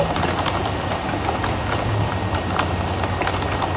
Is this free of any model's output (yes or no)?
yes